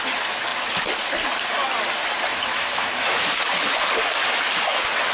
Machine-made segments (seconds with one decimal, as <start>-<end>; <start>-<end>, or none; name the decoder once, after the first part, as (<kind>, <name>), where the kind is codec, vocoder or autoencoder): 2.3-3.3 (autoencoder, DAC-VAE)